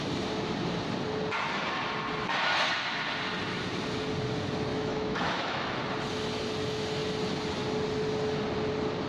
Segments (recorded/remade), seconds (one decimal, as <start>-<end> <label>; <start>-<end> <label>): 0.0-4.7 recorded; 4.7-5.7 remade; 5.7-9.1 recorded